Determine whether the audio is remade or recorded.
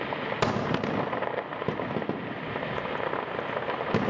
recorded